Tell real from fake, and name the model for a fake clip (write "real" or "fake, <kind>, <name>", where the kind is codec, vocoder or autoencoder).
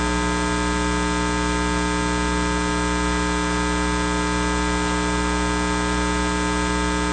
real